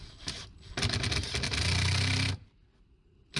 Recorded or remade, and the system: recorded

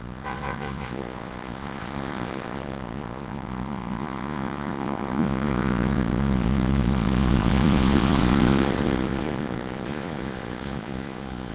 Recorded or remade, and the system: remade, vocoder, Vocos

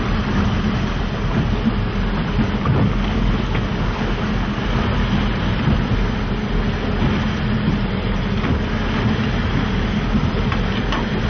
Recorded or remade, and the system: recorded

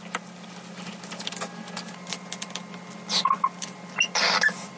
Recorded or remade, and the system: recorded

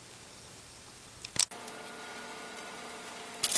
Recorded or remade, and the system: recorded